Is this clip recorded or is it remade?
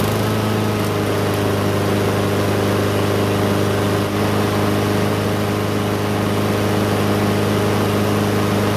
recorded